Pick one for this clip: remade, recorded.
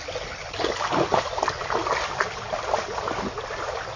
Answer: recorded